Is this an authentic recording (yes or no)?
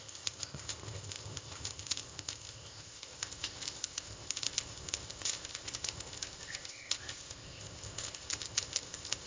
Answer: no